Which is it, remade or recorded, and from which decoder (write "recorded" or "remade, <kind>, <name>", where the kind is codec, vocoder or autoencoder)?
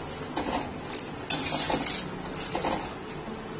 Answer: recorded